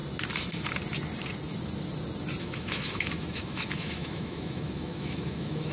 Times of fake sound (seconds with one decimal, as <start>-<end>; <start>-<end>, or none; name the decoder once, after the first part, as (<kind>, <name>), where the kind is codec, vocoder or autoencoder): 2.4-5.7 (autoencoder, DAC-VAE)